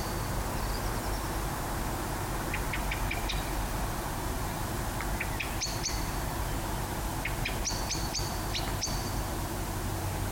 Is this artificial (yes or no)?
no